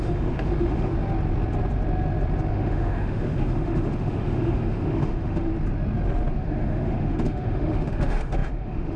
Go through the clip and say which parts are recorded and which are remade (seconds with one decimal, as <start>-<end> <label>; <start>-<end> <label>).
0.0-0.9 remade; 0.9-2.5 recorded; 2.5-5.5 remade; 5.5-6.3 recorded; 6.3-9.0 remade